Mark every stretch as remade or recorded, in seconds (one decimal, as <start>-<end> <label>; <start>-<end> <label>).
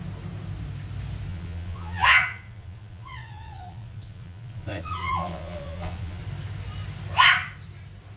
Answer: 0.0-1.3 recorded; 1.3-6.2 remade; 6.2-8.2 recorded